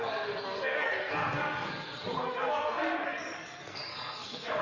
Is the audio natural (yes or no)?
no